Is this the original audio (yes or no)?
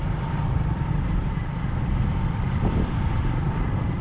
no